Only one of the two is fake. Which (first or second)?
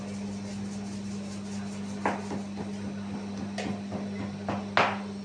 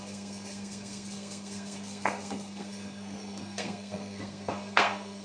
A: second